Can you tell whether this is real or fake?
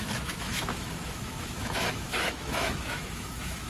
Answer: fake